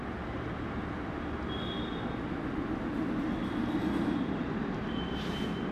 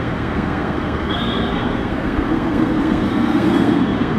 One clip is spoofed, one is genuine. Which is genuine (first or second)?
first